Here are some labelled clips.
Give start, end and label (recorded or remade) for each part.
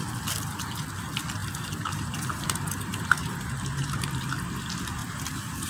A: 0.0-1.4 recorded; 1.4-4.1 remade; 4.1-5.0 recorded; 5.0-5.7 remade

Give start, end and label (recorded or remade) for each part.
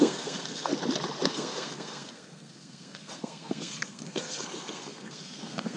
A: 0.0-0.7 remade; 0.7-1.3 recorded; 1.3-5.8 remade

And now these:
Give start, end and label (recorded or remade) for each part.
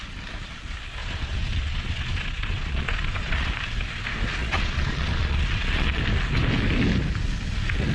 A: 0.0-1.0 recorded; 1.0-3.5 remade; 3.5-4.4 recorded; 4.4-6.0 remade; 6.0-7.9 recorded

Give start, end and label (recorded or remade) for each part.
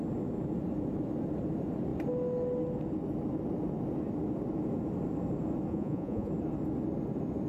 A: 0.0-5.7 recorded; 5.7-6.3 remade; 6.3-7.5 recorded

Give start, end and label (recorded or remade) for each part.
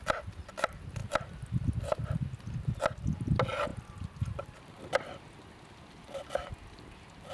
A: 0.0-7.3 recorded